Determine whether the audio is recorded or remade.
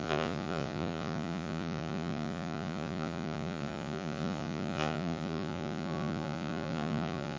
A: remade